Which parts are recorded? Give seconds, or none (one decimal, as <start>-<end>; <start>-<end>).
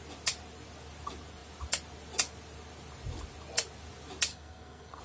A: 0.0-4.3